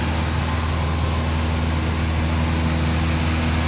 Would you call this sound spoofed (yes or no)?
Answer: no